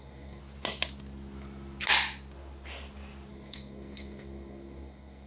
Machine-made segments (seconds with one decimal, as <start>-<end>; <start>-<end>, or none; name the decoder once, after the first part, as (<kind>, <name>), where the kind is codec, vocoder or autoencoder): 0.0-0.4 (codec, SNAC); 3.3-5.3